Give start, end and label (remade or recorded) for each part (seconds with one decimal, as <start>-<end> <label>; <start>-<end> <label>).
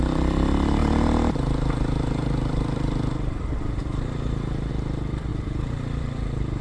0.0-0.8 recorded; 0.8-4.7 remade; 4.7-5.3 recorded; 5.3-6.6 remade